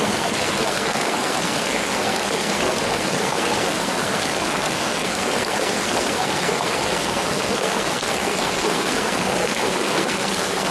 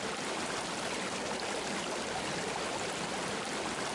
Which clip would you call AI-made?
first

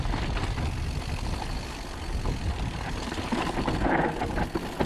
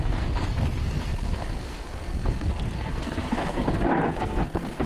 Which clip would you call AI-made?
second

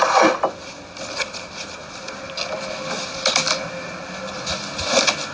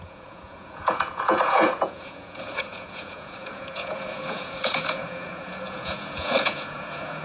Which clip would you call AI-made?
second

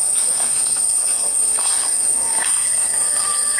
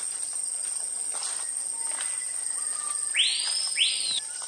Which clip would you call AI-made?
first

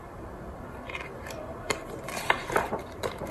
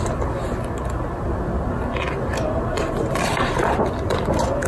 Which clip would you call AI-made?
first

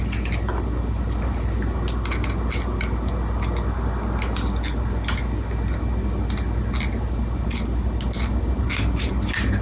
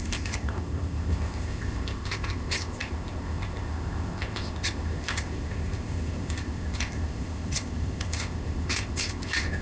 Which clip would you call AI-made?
second